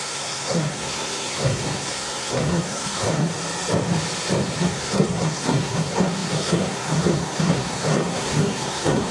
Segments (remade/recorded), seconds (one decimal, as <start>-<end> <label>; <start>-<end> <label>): 0.0-3.3 remade; 3.3-4.6 recorded; 4.6-9.1 remade